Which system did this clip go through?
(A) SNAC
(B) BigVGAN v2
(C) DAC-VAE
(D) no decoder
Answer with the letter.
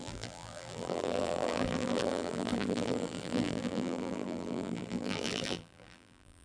B